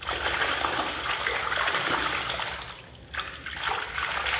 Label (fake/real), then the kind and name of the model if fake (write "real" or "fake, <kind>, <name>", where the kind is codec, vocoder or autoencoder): real